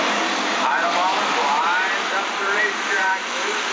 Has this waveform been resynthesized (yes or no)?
yes